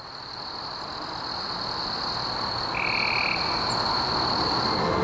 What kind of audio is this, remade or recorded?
recorded